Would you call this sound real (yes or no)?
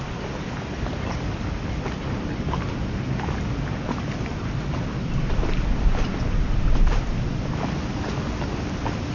yes